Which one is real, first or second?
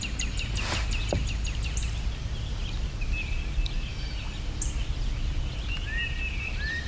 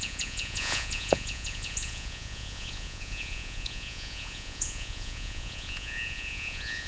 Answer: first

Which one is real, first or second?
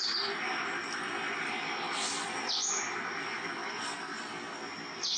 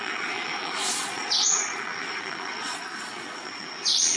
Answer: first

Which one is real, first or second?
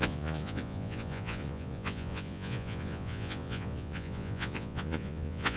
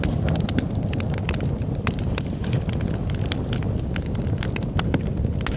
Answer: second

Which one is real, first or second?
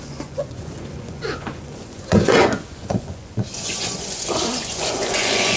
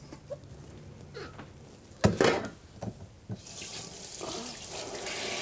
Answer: second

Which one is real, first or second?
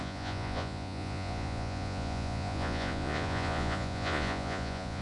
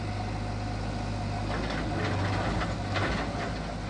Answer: second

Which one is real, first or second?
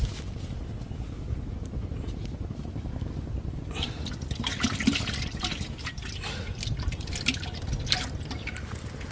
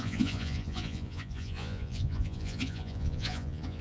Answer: first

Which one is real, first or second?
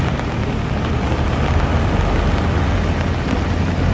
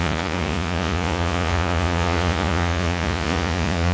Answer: first